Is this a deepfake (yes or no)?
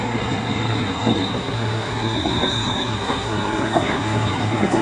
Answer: yes